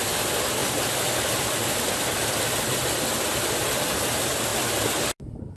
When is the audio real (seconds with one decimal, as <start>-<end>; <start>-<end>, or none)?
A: 0.0-5.6